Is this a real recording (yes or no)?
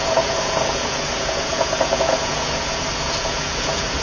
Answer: no